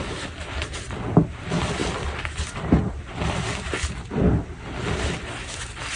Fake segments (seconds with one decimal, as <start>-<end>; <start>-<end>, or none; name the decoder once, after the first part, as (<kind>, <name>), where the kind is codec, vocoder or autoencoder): none